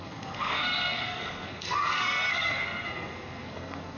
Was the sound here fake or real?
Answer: fake